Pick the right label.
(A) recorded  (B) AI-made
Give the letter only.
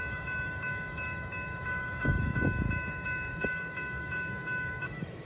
B